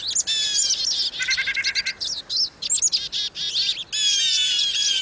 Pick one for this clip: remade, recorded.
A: recorded